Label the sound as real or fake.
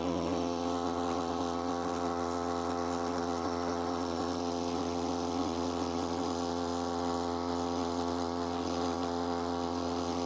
fake